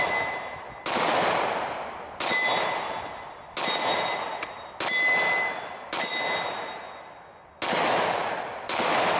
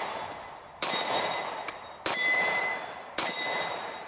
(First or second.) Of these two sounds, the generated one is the second